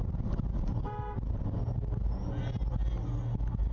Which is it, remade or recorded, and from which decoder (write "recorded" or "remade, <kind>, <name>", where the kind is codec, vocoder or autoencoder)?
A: recorded